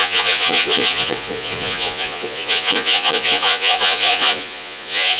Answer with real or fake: fake